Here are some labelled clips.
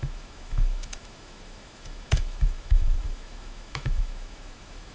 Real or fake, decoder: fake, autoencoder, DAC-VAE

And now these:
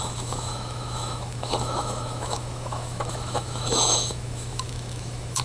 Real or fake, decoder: fake, autoencoder, DAC-VAE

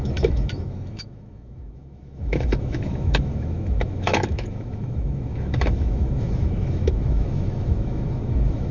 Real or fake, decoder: fake, autoencoder, DAC-VAE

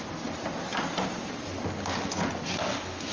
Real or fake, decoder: real